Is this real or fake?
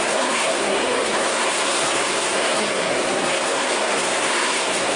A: fake